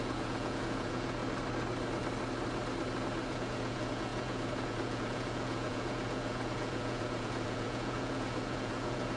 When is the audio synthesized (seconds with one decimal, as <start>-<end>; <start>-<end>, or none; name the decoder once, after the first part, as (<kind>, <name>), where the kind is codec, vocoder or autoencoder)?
0.0-1.2 (vocoder, Vocos); 3.3-9.2